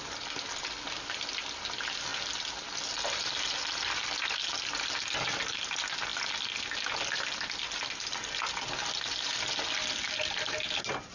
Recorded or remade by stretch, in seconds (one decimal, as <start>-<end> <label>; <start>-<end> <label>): 0.0-11.1 recorded